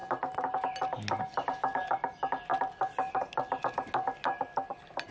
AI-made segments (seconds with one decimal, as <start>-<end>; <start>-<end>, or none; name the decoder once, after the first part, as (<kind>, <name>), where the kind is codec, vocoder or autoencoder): none